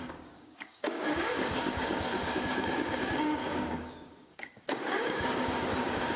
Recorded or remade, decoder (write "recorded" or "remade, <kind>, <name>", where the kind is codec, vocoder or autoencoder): remade, codec, DAC